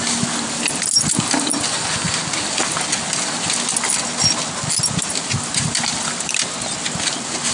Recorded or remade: recorded